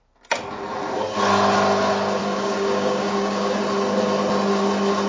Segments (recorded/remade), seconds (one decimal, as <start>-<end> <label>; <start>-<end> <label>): 0.0-2.2 recorded; 2.2-3.6 remade; 3.6-5.1 recorded